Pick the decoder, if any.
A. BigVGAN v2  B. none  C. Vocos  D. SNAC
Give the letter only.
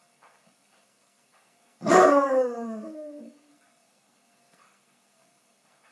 D